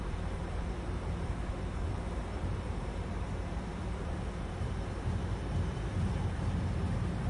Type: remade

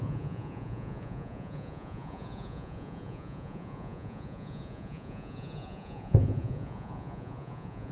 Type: remade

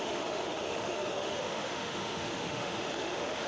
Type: remade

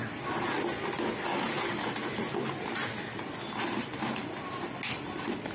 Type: recorded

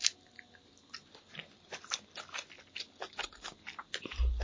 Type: recorded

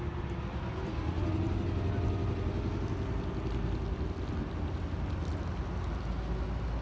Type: recorded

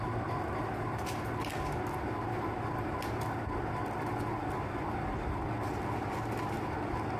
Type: recorded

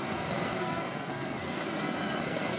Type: remade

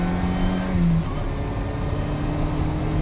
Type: recorded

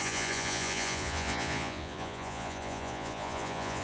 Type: remade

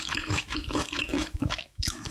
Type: remade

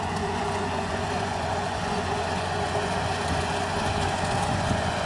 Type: remade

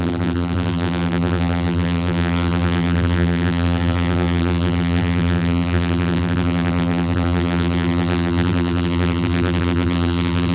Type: remade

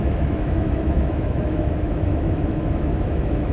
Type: remade